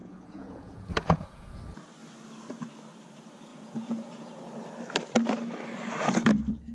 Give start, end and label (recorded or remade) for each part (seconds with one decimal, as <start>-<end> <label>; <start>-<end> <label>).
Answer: 0.0-1.6 remade; 1.6-3.5 recorded; 3.5-4.4 remade; 4.4-6.7 recorded